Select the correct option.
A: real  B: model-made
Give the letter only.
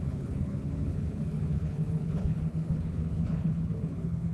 B